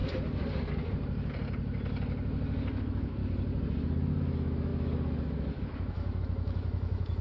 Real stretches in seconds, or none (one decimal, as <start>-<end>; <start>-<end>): 0.0-2.8; 3.2-4.1